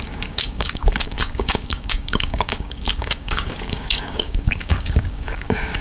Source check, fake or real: fake